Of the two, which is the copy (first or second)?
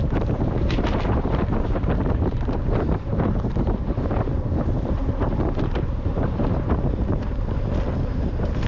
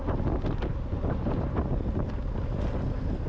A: first